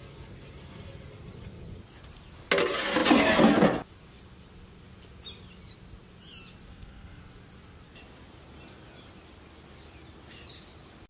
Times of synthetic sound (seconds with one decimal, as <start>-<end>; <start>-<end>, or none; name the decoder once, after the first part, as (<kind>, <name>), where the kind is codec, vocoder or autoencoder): 6.7-7.2 (codec, SNAC)